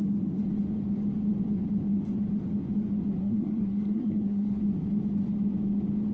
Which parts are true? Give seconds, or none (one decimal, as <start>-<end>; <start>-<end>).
0.0-3.2; 4.6-6.1